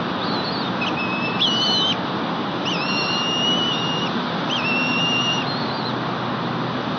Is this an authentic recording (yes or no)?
yes